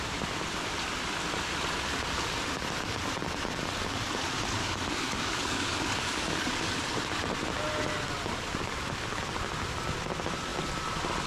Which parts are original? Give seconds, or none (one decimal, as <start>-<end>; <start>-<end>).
0.0-4.6; 6.7-11.3